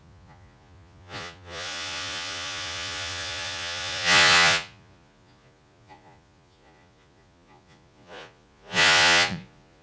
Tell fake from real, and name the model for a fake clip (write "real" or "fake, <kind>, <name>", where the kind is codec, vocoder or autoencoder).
fake, vocoder, Vocos